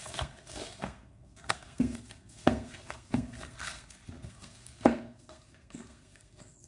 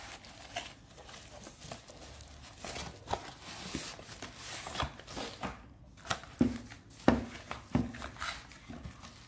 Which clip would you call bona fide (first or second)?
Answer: second